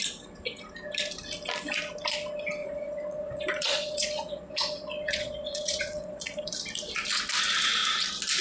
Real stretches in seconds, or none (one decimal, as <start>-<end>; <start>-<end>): 0.0-2.6; 6.5-8.4